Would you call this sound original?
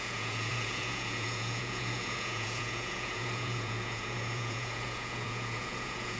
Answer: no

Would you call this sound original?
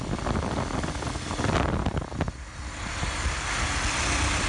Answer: yes